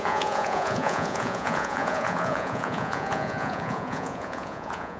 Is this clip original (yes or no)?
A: no